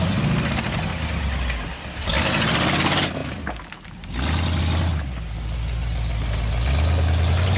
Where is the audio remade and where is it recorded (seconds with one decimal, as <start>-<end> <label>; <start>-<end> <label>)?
0.0-7.6 recorded